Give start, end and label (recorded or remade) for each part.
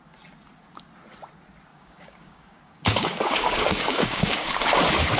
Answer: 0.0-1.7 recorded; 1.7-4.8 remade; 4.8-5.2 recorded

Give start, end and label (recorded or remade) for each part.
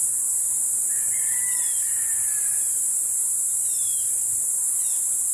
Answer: 0.0-5.3 recorded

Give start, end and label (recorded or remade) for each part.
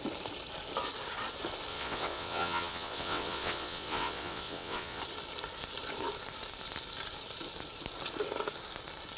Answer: 0.0-1.7 recorded; 1.7-5.0 remade; 5.0-9.2 recorded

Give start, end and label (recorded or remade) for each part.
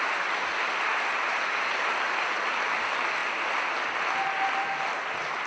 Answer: 0.0-5.5 recorded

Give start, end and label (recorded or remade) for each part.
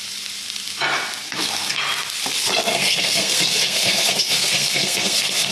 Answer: 0.0-1.2 recorded; 1.2-1.8 remade; 1.8-2.7 recorded; 2.7-5.5 remade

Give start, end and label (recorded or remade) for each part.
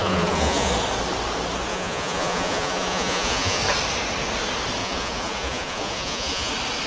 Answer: 0.0-0.7 remade; 0.7-1.7 recorded; 1.7-3.6 remade; 3.6-4.8 recorded; 4.8-6.5 remade; 6.5-6.9 recorded